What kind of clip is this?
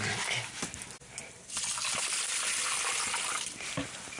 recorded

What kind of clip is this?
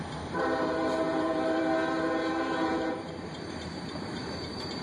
remade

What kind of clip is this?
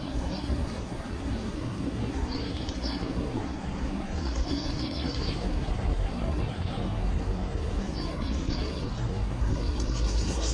remade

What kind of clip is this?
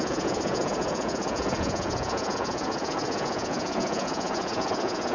remade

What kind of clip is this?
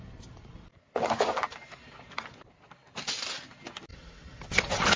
recorded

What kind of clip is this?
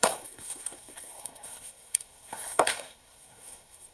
remade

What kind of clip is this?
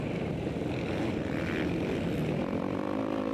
recorded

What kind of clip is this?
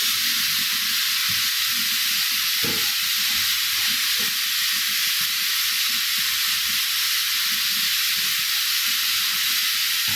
recorded